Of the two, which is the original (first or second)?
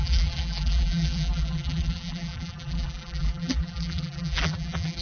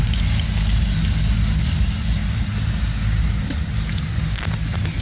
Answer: second